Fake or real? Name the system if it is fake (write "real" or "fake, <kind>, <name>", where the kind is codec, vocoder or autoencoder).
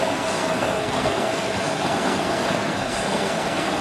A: fake, codec, SNAC